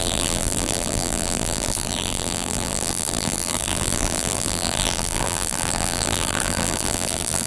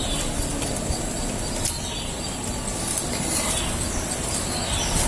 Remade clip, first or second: first